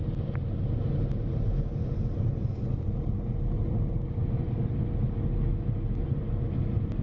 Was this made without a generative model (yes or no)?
yes